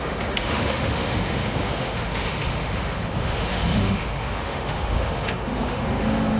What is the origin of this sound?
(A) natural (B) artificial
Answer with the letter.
B